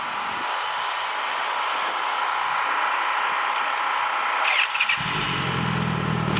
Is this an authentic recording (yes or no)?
yes